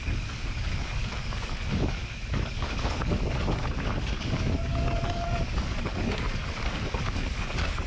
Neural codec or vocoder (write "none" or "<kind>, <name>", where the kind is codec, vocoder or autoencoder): codec, DAC